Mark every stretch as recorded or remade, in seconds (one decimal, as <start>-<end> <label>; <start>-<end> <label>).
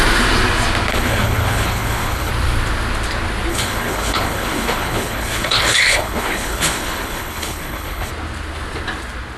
0.0-0.9 recorded; 0.9-2.3 remade; 2.3-3.5 recorded; 3.5-8.1 remade; 8.1-9.4 recorded